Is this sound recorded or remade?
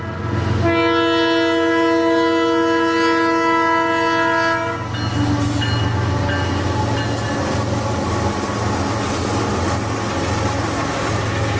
recorded